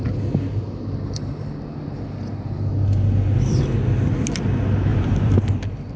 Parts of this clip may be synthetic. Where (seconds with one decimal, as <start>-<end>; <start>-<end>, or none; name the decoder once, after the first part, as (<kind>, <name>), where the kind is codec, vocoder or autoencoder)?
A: 4.9-5.5 (vocoder, BigVGAN v2)